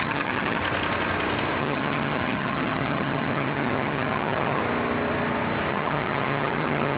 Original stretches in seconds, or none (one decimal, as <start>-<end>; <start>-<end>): 0.6-1.6; 4.6-5.7